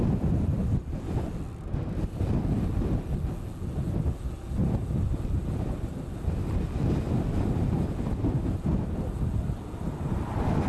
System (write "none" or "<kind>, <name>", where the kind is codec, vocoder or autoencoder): none